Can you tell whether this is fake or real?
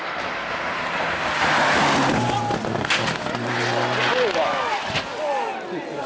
real